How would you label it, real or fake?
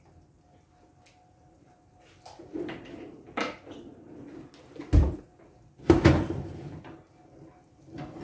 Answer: real